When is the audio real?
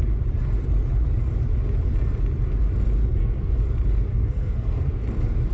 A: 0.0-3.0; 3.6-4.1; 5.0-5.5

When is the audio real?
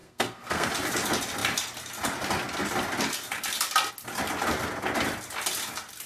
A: 0.7-6.1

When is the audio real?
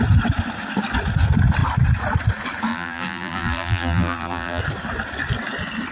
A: 0.0-2.7; 4.6-5.9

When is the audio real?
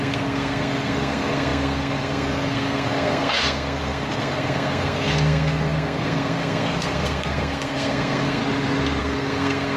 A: 8.4-9.0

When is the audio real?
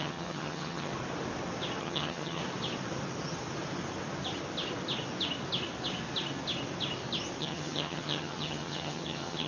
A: 0.9-1.8; 2.4-7.4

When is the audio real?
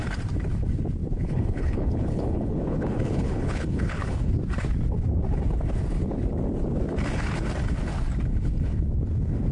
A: 0.0-1.0; 4.3-8.3; 8.9-9.5